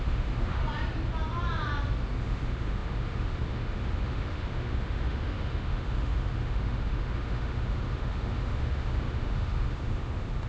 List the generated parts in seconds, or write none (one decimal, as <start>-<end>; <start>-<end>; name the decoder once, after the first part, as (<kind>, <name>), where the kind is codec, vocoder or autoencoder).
0.0-0.6 (autoencoder, DAC-VAE); 2.2-10.5